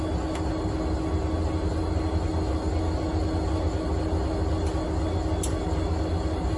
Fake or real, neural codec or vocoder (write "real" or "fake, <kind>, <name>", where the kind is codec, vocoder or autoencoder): real